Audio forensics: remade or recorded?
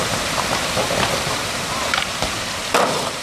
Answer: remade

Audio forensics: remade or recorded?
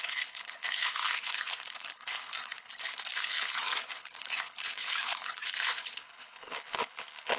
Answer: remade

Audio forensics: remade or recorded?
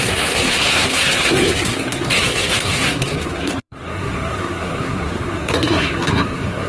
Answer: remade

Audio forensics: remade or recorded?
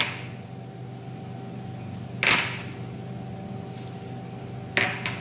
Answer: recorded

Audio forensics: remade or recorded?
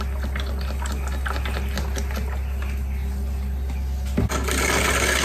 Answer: recorded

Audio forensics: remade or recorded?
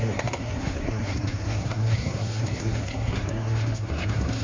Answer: remade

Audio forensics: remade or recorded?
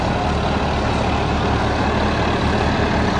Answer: recorded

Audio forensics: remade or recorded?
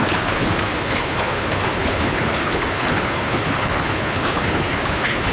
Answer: remade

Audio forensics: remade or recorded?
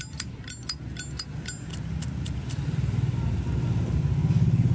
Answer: recorded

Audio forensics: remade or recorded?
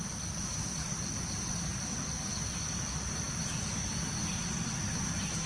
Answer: recorded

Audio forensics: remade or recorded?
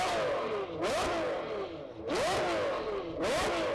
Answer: recorded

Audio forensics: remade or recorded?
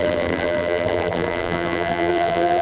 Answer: remade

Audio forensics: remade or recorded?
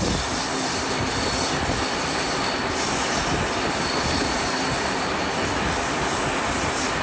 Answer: recorded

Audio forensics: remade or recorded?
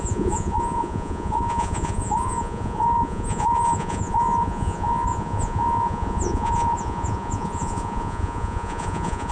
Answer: remade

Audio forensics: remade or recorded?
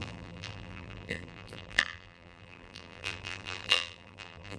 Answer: remade